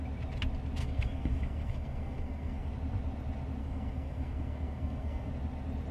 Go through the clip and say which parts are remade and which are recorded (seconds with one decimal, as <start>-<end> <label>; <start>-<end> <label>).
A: 0.0-0.8 recorded; 0.8-2.7 remade; 2.7-3.6 recorded; 3.6-5.3 remade; 5.3-5.9 recorded